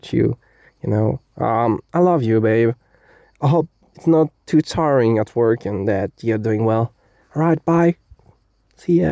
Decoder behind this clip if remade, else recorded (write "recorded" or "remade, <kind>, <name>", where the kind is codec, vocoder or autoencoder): recorded